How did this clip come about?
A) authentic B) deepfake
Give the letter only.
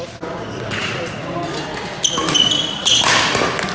A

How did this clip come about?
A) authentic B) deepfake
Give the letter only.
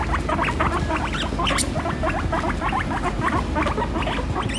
A